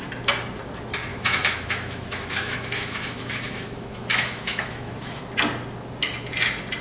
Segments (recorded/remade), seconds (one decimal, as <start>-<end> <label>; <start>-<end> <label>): 0.0-1.1 recorded; 1.1-5.2 remade; 5.2-6.8 recorded